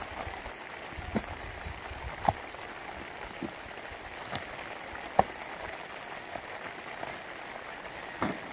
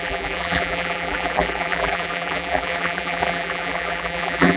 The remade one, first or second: second